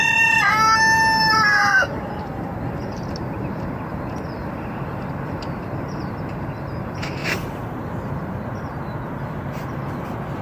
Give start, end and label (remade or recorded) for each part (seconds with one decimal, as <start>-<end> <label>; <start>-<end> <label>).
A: 0.0-1.6 recorded; 1.6-2.2 remade; 2.2-4.4 recorded; 4.4-5.1 remade; 5.1-7.2 recorded; 7.2-7.8 remade; 7.8-10.4 recorded